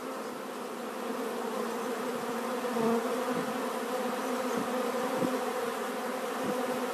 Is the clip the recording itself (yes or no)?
yes